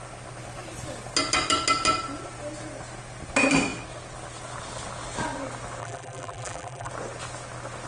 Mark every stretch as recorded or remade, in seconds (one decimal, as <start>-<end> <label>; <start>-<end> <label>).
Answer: 0.0-5.8 recorded; 5.8-6.9 remade; 6.9-7.9 recorded